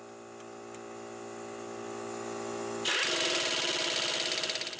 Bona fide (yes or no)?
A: yes